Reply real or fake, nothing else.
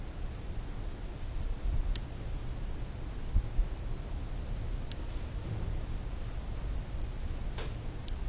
real